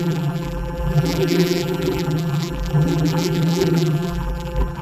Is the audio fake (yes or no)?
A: yes